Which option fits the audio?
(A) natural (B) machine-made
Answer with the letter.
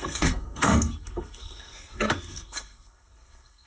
B